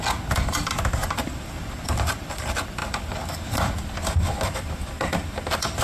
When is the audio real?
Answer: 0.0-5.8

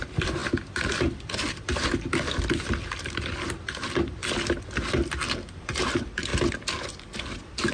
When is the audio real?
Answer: 4.2-5.3

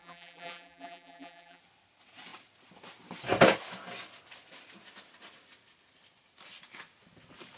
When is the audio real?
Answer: 1.6-7.6